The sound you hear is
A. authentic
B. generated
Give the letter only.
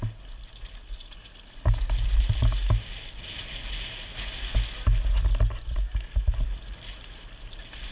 A